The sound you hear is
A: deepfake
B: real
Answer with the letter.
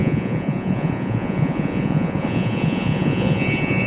A